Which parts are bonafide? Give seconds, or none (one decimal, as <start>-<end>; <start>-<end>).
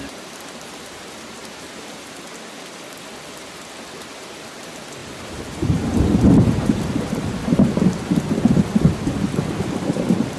0.0-5.0; 7.7-10.4